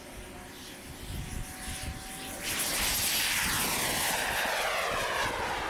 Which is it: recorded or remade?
recorded